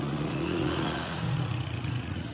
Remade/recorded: remade